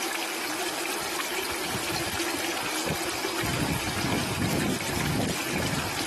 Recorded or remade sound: recorded